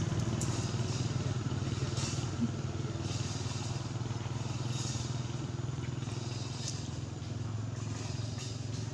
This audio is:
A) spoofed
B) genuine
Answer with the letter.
B